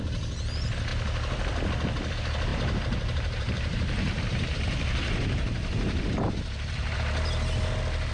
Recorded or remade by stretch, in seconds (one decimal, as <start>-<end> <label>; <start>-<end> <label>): 0.0-2.5 recorded; 2.5-7.0 remade; 7.0-8.1 recorded